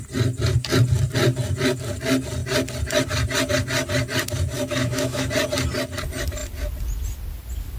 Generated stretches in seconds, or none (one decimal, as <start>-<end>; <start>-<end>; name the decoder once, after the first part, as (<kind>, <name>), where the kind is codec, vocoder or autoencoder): 4.8-5.3 (autoencoder, DAC-VAE)